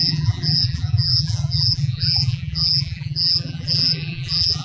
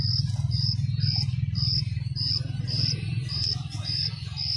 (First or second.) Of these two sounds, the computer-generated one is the first